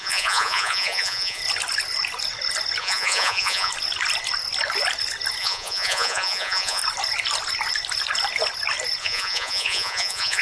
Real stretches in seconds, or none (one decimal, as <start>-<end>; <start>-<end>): 1.4-2.8; 3.7-5.4; 6.8-9.0